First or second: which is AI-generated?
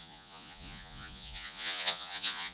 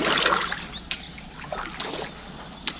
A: first